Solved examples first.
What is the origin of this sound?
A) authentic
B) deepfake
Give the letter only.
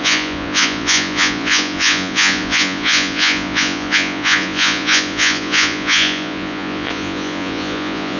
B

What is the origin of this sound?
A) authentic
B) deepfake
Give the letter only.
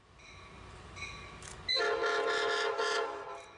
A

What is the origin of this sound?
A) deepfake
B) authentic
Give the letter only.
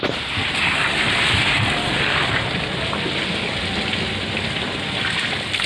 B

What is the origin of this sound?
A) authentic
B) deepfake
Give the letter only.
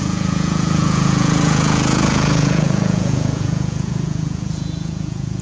B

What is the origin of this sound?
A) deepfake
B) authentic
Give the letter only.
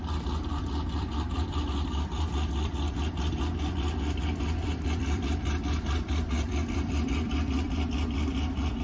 A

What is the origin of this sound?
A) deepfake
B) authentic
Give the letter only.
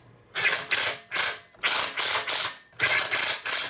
B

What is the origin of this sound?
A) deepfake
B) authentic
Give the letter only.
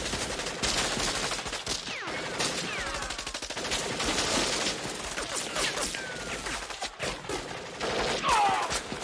B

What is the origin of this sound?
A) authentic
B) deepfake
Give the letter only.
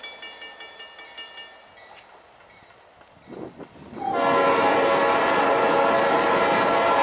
A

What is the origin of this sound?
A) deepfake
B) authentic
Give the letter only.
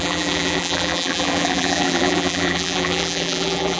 A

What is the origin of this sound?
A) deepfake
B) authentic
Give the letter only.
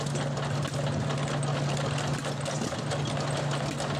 B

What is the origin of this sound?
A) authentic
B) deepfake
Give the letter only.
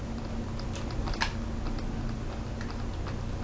A